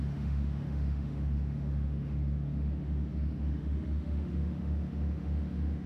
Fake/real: fake